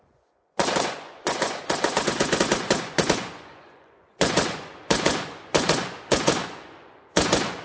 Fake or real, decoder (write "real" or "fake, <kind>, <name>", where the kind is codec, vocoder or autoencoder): fake, vocoder, Vocos